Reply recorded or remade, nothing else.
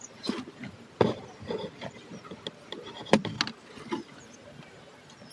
recorded